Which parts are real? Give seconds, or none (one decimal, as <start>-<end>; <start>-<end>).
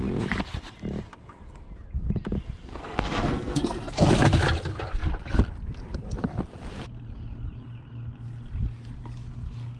0.0-2.6; 4.1-9.8